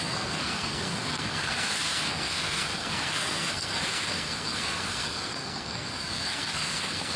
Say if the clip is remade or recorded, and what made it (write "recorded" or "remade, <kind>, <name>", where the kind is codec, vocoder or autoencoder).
remade, codec, SNAC